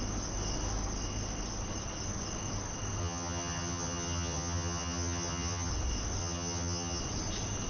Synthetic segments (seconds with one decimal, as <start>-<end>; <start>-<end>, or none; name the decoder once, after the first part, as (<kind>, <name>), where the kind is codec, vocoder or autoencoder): 3.0-5.7 (vocoder, HiFi-GAN); 6.2-7.0